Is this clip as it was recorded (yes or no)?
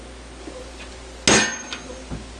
yes